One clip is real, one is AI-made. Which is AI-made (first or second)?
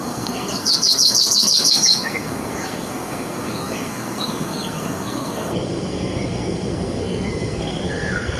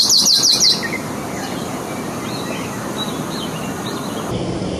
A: first